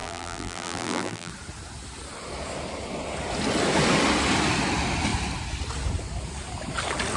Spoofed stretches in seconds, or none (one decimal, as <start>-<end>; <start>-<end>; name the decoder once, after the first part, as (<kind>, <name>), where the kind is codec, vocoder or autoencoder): 0.0-1.3 (vocoder, BigVGAN v2)